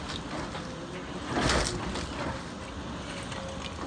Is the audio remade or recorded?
recorded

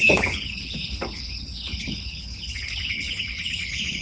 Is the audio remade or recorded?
remade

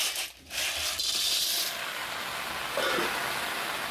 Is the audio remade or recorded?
recorded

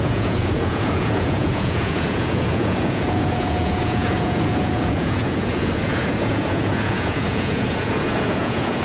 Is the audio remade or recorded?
remade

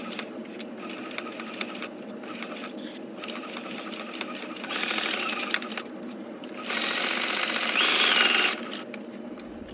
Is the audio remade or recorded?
recorded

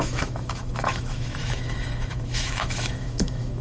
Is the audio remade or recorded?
remade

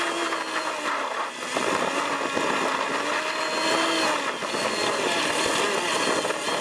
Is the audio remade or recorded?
recorded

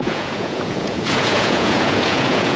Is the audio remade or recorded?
remade